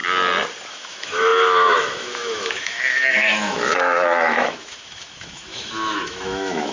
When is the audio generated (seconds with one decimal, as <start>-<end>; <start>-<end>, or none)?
0.7-6.7